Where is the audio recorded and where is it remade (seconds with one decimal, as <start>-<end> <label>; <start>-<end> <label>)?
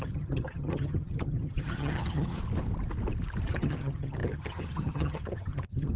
0.0-2.4 remade; 2.4-3.5 recorded; 3.5-6.0 remade